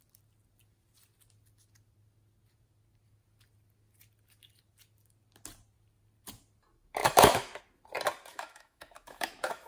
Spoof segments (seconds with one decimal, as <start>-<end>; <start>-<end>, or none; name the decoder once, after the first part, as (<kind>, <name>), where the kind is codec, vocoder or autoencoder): 7.0-7.6 (autoencoder, DAC-VAE); 8.3-9.7